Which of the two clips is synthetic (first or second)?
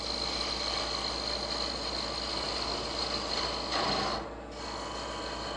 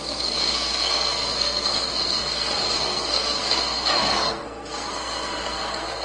second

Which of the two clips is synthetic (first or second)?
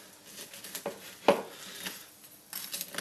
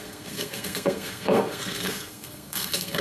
second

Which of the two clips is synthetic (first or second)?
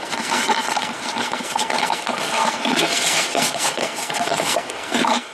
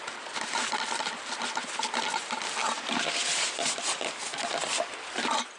first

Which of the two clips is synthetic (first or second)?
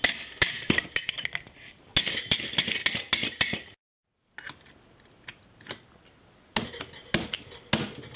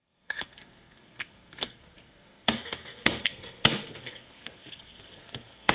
second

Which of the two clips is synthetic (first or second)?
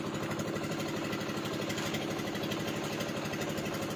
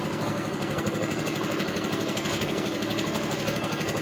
second